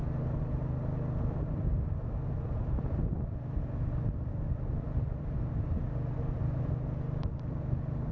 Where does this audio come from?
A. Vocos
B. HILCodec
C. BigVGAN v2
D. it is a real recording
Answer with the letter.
D